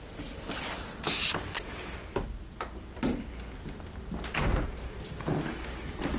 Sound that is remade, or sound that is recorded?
recorded